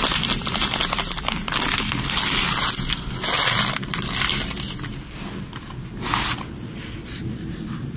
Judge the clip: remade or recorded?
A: recorded